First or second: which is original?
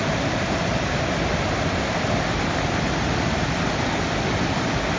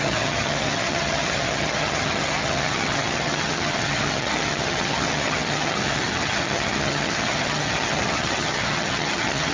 first